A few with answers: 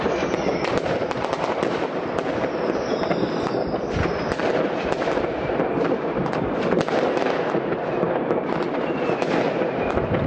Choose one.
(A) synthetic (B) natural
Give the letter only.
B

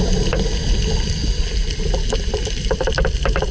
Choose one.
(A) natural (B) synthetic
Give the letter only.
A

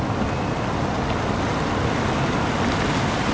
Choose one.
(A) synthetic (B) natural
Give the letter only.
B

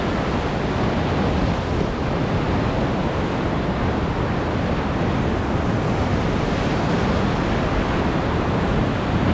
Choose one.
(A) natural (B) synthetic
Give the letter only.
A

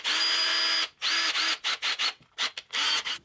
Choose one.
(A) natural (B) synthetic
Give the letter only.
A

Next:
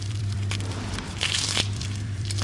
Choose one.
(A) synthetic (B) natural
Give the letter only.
A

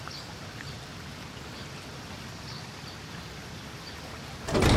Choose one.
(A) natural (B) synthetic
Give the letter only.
A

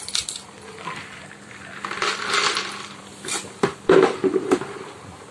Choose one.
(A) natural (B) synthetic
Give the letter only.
B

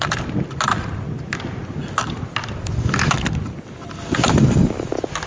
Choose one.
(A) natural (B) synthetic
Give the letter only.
A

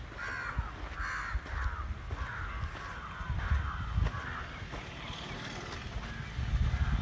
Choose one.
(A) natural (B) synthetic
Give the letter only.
A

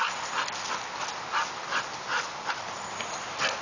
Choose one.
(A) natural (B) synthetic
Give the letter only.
A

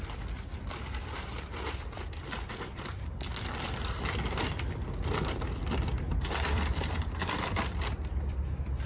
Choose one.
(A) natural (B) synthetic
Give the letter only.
B